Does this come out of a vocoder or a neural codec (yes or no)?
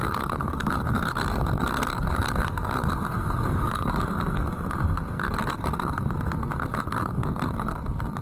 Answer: yes